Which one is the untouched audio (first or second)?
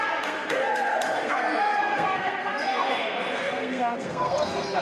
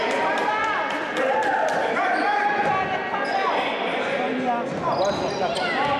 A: second